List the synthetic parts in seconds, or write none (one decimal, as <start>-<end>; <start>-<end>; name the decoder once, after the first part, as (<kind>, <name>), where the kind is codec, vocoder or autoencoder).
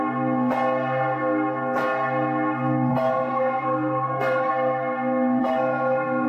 2.9-4.5 (codec, SNAC); 5.4-6.3